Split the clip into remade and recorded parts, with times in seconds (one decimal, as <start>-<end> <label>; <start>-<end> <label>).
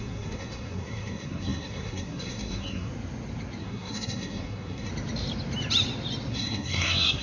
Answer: 0.0-2.9 remade; 2.9-3.6 recorded; 3.6-4.9 remade; 4.9-6.3 recorded; 6.3-7.2 remade